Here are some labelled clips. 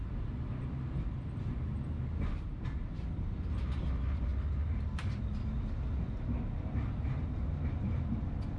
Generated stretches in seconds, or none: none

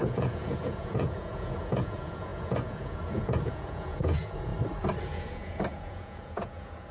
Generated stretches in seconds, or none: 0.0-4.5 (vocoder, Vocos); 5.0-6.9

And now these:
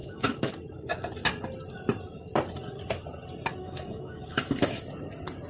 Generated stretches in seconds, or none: 0.0-0.5 (autoencoder, DAC-VAE); 3.6-4.8

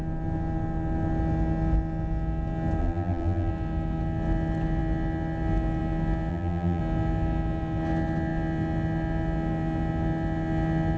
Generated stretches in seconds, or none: 2.8-3.5 (vocoder, BigVGAN v2); 6.3-6.8